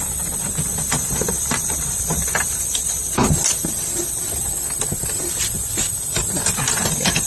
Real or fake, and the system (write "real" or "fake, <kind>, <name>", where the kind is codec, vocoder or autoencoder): fake, vocoder, BigVGAN v2